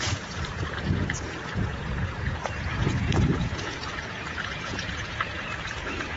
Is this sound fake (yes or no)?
yes